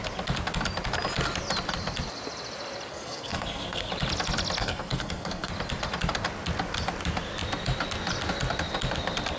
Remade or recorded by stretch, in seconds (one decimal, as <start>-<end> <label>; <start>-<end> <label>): 0.0-2.9 recorded; 2.9-3.9 remade; 3.9-4.6 recorded; 4.6-5.5 remade; 5.5-9.4 recorded